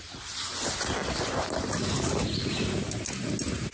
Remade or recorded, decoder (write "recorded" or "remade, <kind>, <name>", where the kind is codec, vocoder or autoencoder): recorded